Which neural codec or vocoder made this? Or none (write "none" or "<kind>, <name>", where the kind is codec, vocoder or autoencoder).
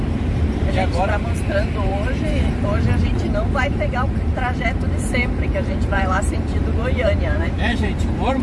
vocoder, BigVGAN v2